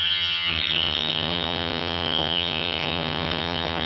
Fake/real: fake